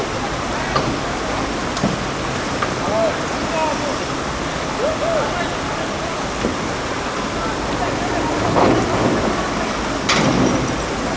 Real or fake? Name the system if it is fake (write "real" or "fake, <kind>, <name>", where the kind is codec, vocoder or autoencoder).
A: real